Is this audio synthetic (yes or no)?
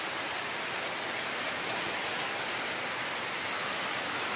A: no